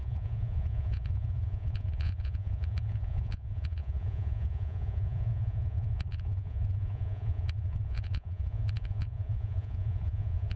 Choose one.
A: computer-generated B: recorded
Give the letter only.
A